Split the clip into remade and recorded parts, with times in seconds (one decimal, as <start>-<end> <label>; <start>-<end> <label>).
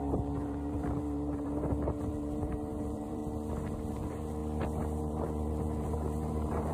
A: 0.0-3.2 remade; 3.2-3.9 recorded; 3.9-4.4 remade; 4.4-5.0 recorded; 5.0-6.7 remade